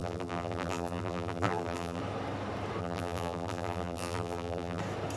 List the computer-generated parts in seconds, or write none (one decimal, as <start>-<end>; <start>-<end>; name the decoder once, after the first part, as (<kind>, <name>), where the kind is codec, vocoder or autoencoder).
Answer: 0.0-2.0 (vocoder, BigVGAN v2); 2.8-4.8

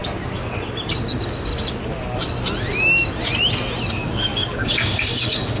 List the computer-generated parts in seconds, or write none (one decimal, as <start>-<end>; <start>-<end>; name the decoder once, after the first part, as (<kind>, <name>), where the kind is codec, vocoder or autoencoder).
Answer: 0.9-1.5 (codec, DAC); 3.9-5.6